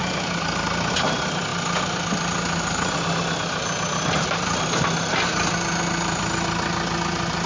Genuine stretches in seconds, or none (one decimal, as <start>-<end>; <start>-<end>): 0.0-7.5